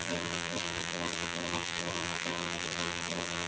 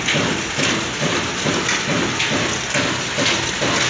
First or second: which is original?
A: second